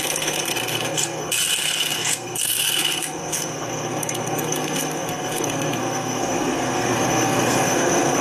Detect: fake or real fake